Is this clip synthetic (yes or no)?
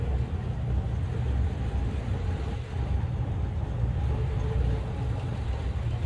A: no